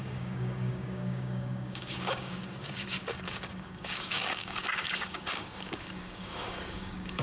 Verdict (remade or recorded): remade